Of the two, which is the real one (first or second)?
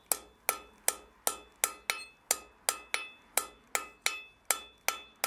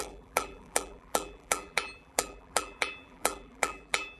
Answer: first